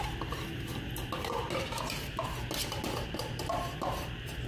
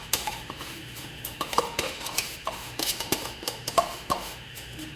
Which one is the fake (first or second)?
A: second